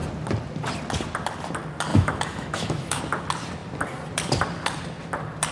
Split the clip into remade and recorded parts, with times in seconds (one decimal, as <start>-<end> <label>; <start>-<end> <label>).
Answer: 0.0-1.9 recorded; 1.9-3.0 remade; 3.0-5.5 recorded